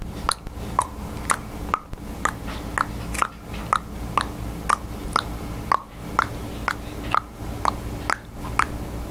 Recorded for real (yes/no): yes